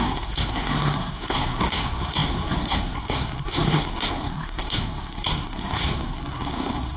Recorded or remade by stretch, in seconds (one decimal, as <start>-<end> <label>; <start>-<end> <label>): 0.0-7.0 remade